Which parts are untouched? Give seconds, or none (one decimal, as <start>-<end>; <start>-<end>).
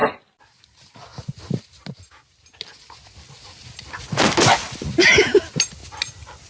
0.0-6.5